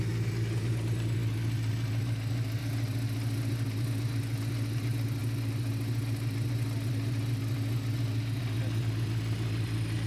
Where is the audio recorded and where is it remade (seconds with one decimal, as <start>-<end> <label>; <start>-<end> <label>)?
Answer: 0.0-10.1 recorded